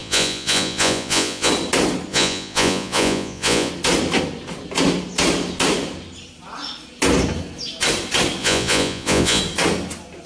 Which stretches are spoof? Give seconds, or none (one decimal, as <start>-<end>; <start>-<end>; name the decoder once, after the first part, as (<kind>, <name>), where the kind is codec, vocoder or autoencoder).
0.0-1.5 (vocoder, Vocos); 2.1-3.7; 8.4-9.4

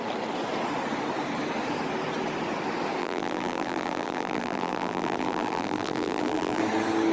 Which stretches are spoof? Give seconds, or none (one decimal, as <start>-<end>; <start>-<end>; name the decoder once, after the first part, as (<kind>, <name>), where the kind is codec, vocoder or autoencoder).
3.0-6.6 (vocoder, BigVGAN v2)

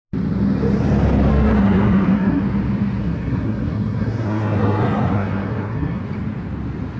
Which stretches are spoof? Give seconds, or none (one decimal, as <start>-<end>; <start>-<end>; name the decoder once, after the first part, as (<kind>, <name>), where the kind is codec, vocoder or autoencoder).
1.3-2.4 (codec, SNAC); 3.0-6.0